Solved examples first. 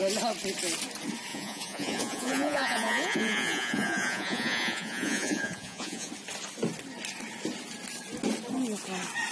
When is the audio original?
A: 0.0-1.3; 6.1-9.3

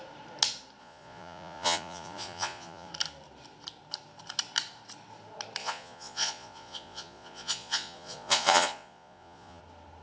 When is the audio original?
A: 0.0-0.8; 2.9-5.6; 9.6-10.0